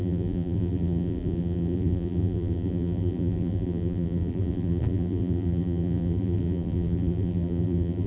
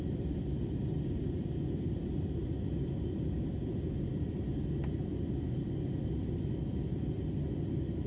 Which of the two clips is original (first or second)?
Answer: second